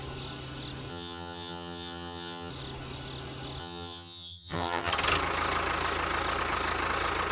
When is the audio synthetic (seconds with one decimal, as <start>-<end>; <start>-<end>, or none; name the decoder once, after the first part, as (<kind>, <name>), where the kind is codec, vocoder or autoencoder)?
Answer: 0.9-2.5 (vocoder, HiFi-GAN); 3.6-4.9